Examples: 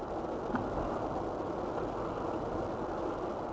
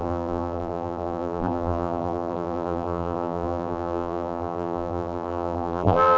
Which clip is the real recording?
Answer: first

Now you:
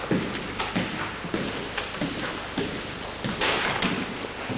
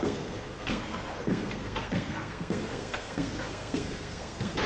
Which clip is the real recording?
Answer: first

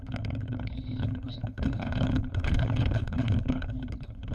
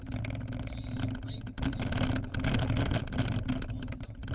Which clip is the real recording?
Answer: second